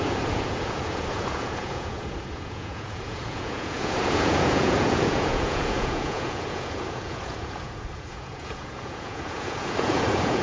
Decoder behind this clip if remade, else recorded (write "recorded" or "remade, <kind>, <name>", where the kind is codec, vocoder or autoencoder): remade, vocoder, Vocos